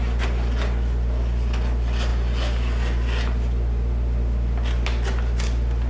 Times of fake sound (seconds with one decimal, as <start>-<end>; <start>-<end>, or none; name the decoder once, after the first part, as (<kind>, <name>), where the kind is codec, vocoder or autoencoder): none